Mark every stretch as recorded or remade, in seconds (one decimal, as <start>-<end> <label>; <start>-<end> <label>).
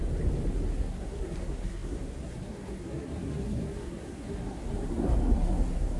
0.0-0.8 recorded; 0.8-6.0 remade